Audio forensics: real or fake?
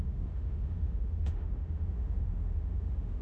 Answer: fake